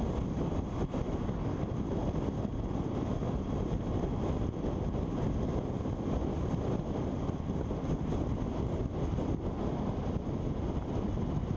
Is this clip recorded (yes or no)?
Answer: yes